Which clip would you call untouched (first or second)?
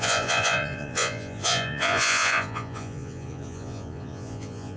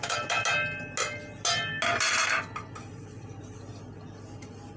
second